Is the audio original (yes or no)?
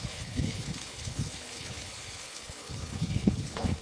no